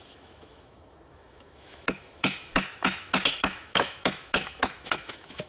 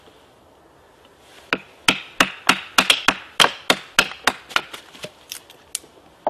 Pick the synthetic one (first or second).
first